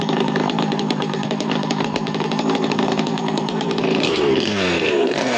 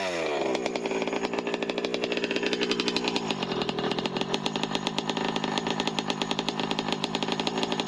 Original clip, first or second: second